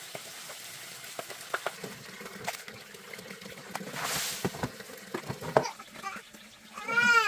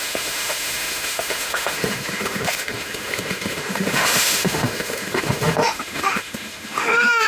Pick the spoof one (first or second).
second